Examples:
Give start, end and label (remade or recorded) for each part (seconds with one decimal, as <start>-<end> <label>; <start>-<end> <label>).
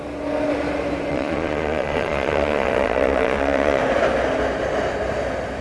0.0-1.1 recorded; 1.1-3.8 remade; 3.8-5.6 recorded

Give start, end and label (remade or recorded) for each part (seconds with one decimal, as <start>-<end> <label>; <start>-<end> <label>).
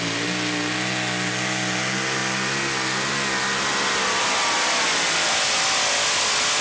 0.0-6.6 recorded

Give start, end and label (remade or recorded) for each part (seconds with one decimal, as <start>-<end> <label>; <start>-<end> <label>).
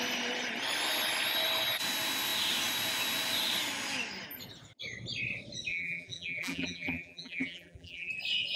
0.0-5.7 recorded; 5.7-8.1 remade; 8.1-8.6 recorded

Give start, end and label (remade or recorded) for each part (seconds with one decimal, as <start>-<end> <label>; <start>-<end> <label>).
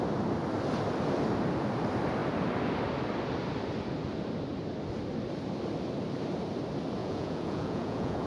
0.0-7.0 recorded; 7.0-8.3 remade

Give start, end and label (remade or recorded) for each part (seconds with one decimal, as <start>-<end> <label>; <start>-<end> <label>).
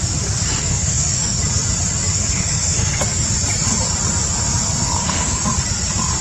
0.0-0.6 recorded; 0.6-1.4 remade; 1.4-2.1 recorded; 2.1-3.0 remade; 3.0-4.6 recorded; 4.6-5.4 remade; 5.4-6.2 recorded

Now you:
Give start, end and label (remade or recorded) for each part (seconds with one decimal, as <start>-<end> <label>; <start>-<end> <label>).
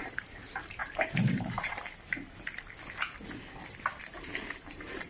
0.0-2.6 remade; 2.6-4.0 recorded; 4.0-5.1 remade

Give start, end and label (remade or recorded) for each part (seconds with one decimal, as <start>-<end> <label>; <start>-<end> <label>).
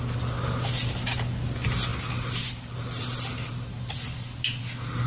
0.0-5.1 recorded